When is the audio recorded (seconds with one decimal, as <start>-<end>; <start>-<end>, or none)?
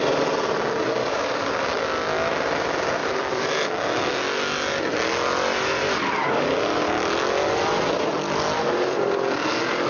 0.0-1.0; 1.6-9.9